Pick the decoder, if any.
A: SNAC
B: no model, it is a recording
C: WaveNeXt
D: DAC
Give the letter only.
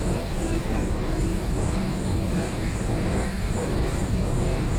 D